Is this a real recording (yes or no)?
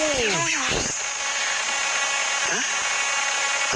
yes